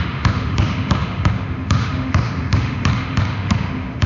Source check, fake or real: fake